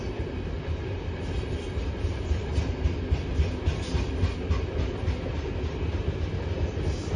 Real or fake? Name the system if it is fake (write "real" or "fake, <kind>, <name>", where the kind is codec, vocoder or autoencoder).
real